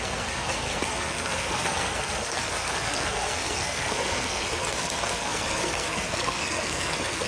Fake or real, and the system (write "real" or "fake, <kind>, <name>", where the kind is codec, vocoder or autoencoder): fake, codec, SNAC